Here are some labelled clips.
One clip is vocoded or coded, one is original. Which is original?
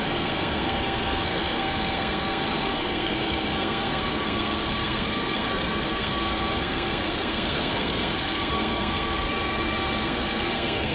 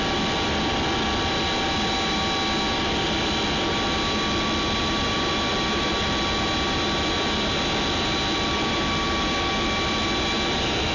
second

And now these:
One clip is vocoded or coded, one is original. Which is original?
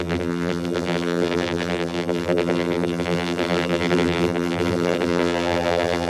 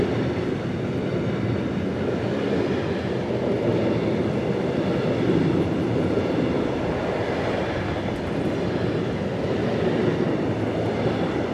second